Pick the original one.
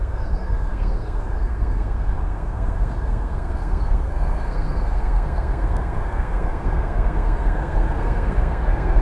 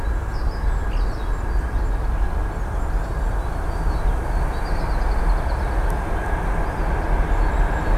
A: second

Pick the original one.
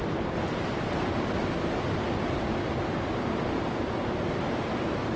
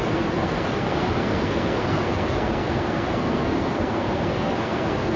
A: first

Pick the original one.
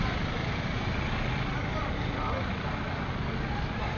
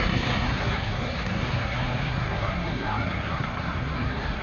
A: first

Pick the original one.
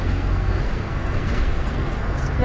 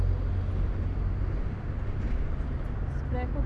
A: second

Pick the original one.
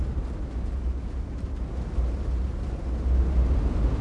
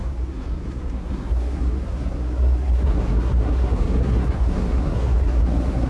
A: first